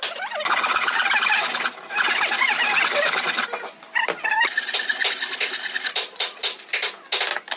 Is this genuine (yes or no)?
yes